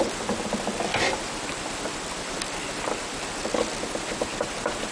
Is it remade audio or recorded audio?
recorded